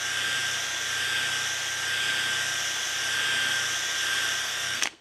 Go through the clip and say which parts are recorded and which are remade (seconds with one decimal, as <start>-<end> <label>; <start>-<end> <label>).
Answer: 0.0-4.4 recorded; 4.4-5.0 remade